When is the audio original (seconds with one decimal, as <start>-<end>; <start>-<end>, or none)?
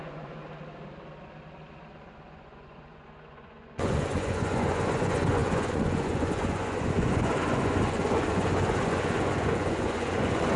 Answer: 0.4-1.9